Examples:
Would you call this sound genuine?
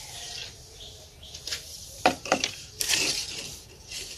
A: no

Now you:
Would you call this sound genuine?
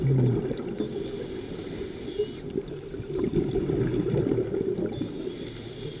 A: yes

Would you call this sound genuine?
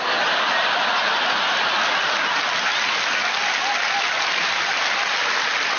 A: yes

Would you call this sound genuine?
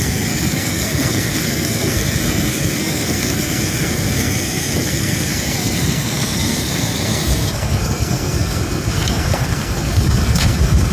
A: no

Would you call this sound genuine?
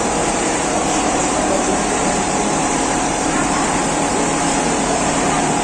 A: no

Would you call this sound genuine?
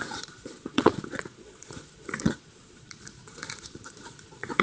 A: no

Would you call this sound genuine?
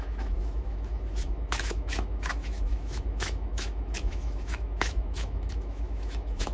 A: no